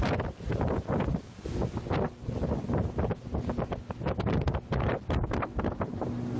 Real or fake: real